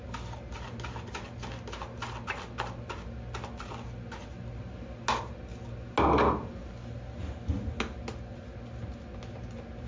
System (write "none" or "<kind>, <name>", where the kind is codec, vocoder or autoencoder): none